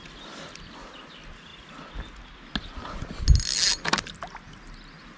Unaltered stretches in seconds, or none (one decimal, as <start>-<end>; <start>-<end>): 0.0-5.2

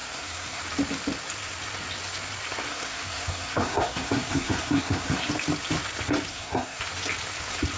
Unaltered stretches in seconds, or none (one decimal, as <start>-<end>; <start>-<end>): 0.6-2.7; 5.3-6.3; 6.8-7.8

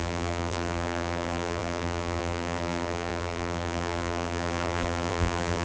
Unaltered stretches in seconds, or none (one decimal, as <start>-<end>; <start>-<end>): none

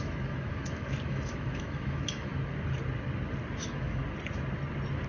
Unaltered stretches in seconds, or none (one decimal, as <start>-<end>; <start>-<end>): 2.3-3.6; 4.0-5.1